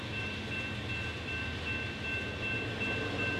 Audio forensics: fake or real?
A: real